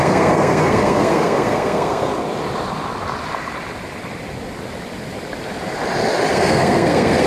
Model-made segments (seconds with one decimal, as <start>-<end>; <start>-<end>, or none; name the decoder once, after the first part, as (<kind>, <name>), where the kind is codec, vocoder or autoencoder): 0.0-2.1 (codec, SNAC); 6.3-7.3